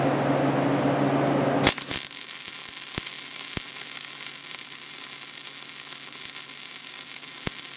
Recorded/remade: recorded